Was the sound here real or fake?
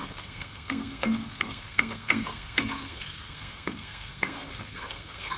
fake